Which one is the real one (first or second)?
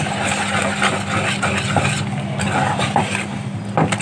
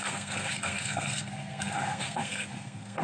first